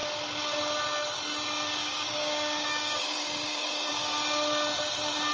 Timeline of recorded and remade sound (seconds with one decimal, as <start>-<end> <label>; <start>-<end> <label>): 0.0-1.8 recorded; 1.8-3.9 remade; 3.9-5.3 recorded